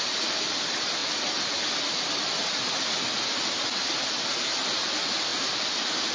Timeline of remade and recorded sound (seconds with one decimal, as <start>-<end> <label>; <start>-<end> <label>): 0.0-6.1 recorded